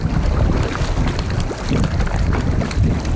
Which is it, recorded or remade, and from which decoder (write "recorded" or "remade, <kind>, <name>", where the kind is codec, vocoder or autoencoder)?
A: recorded